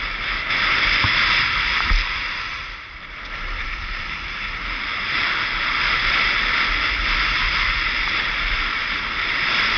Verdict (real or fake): fake